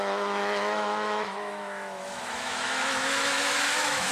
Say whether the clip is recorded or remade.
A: remade